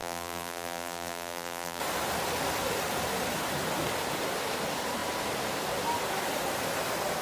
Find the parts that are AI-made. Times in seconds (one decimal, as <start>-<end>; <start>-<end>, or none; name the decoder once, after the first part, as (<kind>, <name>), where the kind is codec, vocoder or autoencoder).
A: 0.0-1.8 (vocoder, BigVGAN v2)